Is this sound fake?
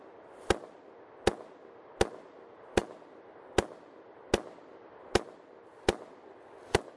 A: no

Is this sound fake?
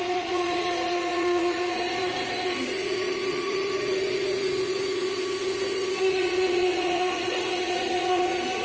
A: yes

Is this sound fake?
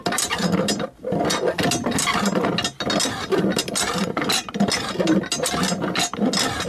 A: no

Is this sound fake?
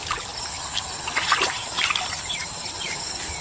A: yes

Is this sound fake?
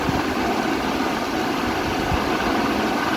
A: no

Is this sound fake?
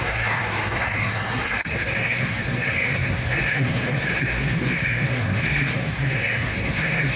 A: yes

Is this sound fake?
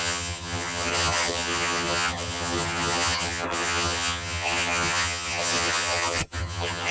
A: yes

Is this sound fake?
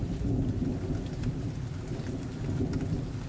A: no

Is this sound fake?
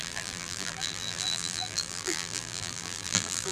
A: yes